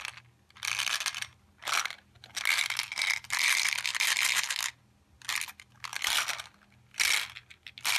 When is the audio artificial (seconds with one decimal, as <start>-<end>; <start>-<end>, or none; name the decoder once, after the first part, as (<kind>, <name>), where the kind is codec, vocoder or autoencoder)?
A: none